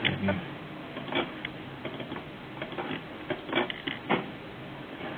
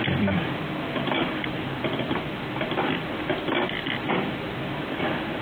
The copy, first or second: second